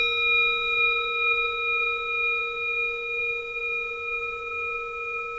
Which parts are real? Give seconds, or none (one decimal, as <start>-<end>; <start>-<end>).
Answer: 0.0-5.4